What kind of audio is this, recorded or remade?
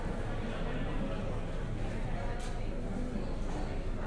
recorded